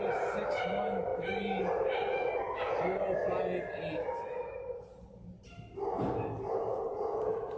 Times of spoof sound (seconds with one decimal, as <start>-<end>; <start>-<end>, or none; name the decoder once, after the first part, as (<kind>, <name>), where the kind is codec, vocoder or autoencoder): none